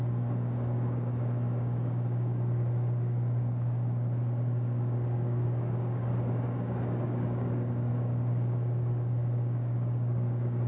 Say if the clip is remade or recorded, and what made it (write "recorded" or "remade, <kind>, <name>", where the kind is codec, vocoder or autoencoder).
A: remade, codec, DAC